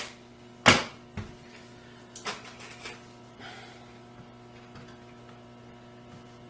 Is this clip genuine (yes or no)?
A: yes